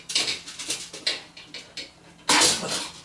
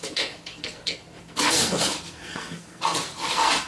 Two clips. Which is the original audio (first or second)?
first